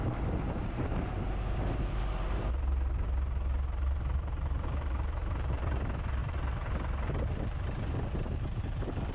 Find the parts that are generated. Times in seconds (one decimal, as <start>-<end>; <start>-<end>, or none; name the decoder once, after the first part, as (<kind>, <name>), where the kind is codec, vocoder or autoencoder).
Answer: 0.0-9.1 (vocoder, BigVGAN v2)